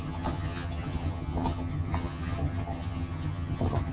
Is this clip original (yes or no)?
no